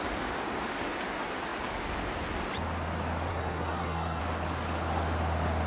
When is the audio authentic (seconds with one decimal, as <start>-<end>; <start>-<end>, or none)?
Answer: 0.0-3.3; 4.2-5.7